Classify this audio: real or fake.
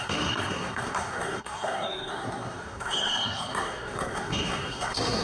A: fake